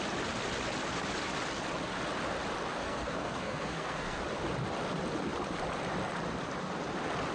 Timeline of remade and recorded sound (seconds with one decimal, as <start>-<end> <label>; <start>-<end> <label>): 0.0-2.8 recorded; 2.8-4.2 remade; 4.2-7.3 recorded